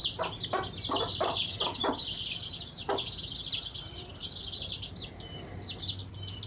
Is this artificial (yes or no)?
no